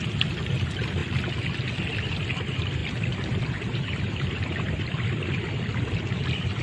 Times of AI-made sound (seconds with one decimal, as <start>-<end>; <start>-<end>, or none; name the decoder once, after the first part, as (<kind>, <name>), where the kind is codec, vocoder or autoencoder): 0.0-1.0 (vocoder, BigVGAN v2); 2.1-6.6

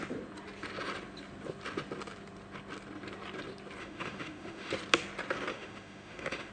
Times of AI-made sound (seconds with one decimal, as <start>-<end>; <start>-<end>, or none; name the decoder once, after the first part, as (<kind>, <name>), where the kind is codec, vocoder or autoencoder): 3.8-4.7 (autoencoder, DAC-VAE); 5.5-6.5

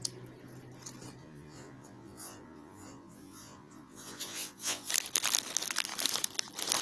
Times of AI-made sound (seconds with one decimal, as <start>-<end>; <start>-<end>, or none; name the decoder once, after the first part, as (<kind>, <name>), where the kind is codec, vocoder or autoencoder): 1.2-4.9 (vocoder, Vocos)

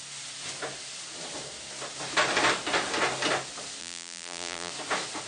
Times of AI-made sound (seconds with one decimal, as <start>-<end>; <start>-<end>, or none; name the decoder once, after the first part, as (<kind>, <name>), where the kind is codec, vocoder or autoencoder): 3.8-4.7 (vocoder, BigVGAN v2)

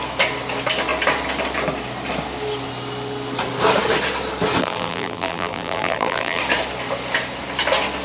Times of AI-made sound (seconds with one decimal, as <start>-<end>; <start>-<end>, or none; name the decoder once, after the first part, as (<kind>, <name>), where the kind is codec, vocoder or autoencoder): 4.6-6.4 (vocoder, BigVGAN v2)

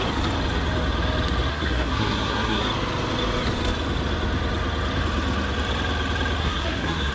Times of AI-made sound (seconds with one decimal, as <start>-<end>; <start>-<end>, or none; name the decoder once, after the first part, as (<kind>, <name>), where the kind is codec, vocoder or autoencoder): 1.5-2.6 (codec, SNAC); 6.4-7.1

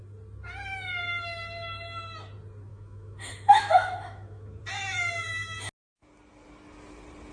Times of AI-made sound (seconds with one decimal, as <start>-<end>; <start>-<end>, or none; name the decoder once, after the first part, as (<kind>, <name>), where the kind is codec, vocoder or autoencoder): 2.7-4.6 (autoencoder, DAC-VAE)

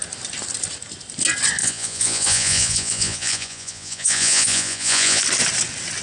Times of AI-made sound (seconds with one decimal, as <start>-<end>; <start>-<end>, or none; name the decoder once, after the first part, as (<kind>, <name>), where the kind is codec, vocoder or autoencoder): 1.6-5.2 (vocoder, Vocos)